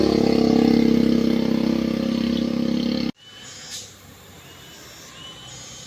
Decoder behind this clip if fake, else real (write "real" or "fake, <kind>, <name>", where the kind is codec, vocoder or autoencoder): real